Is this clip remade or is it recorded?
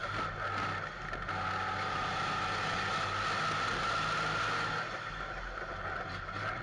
recorded